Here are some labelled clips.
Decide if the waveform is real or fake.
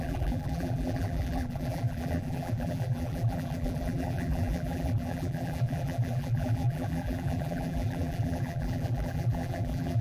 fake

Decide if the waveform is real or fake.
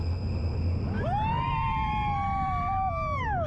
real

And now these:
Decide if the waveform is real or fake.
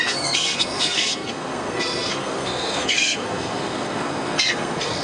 fake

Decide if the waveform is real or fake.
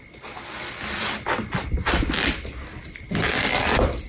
real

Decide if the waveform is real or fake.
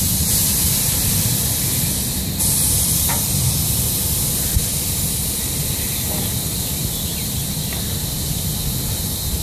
real